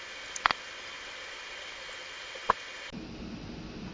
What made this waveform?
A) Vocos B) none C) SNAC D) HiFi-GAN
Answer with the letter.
B